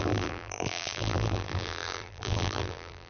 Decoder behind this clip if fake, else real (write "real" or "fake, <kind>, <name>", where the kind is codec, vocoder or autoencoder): fake, vocoder, BigVGAN v2